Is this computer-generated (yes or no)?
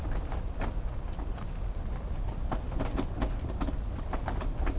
no